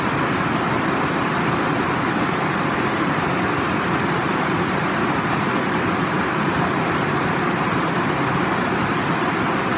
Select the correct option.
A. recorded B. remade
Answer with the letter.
A